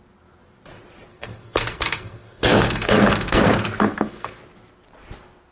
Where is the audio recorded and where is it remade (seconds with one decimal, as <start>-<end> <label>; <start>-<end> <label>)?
0.0-1.1 recorded; 1.1-4.4 remade; 4.4-5.5 recorded